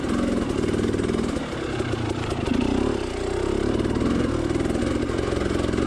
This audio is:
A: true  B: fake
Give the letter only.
A